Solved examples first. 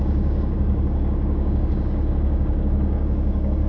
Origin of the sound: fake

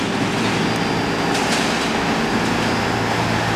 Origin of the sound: real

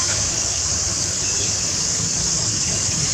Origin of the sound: fake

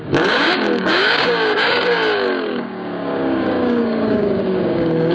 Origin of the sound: fake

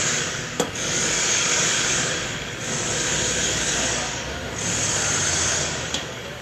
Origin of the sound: fake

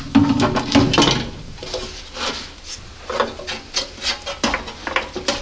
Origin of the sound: real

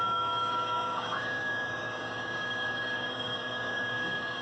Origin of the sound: fake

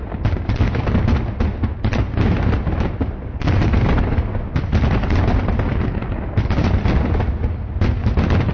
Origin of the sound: real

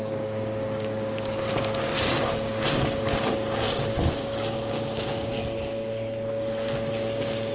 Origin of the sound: fake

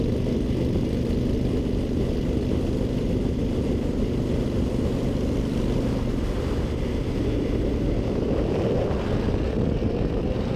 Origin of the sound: real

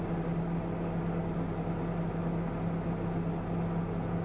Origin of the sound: real